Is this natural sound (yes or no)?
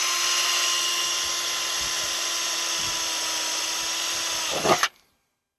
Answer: yes